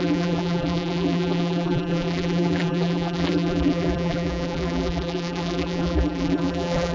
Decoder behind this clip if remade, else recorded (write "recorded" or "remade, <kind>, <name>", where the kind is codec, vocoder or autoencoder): remade, vocoder, BigVGAN v2